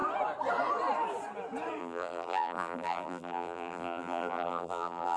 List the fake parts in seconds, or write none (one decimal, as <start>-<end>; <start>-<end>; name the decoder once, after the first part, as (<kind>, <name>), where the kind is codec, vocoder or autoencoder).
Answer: 1.8-5.2 (vocoder, BigVGAN v2)